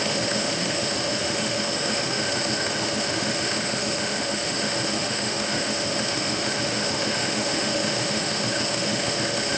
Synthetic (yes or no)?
yes